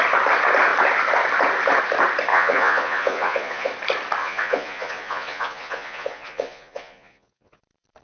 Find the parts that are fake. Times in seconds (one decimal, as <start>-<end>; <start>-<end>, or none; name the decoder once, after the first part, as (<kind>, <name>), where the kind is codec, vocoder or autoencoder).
2.3-3.7 (vocoder, Vocos); 4.2-7.6